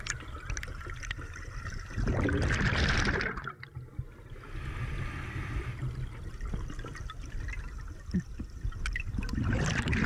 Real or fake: real